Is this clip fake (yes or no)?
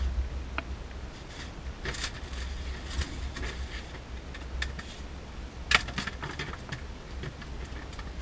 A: no